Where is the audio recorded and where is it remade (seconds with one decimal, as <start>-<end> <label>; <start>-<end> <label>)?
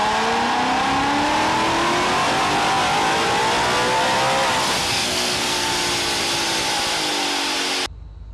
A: 0.0-4.9 recorded; 4.9-5.7 remade; 5.7-8.3 recorded